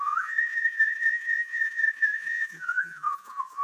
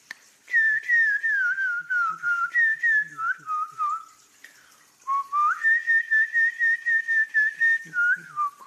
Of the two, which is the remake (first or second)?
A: first